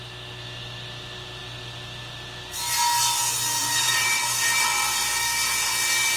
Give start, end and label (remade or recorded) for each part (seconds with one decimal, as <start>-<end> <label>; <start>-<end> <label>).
0.0-3.6 recorded; 3.6-5.5 remade; 5.5-6.2 recorded